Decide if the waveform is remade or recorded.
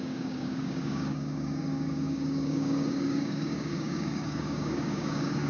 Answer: remade